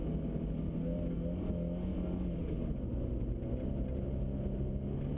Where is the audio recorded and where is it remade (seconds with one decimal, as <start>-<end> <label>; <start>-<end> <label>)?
0.0-5.2 recorded